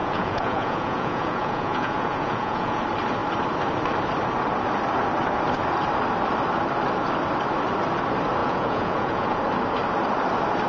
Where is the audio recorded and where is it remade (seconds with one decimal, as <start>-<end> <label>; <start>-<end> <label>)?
0.0-2.8 remade; 2.8-8.4 recorded; 8.4-9.4 remade; 9.4-10.7 recorded